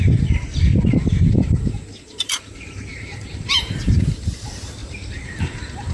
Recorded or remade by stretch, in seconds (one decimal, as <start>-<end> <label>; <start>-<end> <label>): 0.0-0.7 remade; 0.7-1.3 recorded; 1.3-5.9 remade

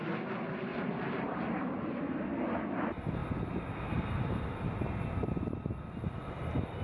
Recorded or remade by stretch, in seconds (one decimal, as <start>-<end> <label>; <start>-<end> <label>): 0.0-0.7 recorded; 0.7-1.9 remade; 1.9-6.8 recorded

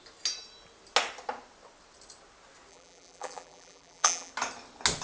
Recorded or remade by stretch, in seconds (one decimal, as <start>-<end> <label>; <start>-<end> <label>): 0.0-2.7 recorded; 2.7-4.3 remade; 4.3-5.0 recorded

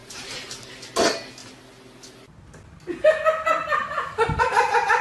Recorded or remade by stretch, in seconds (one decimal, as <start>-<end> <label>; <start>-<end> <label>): 0.0-0.7 remade; 0.7-5.0 recorded

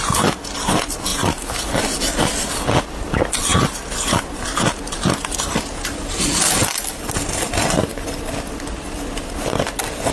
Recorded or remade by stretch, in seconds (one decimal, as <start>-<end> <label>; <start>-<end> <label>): 0.0-1.1 recorded; 1.1-2.0 remade; 2.0-6.6 recorded; 6.6-7.9 remade; 7.9-10.1 recorded